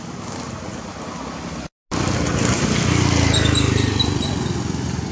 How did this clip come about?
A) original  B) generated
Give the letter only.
A